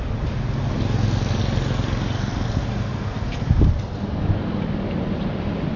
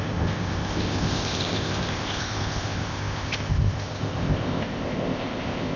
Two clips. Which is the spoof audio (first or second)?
second